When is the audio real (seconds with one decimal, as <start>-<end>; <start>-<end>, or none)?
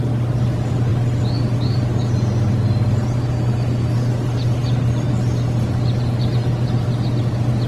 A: 0.0-7.7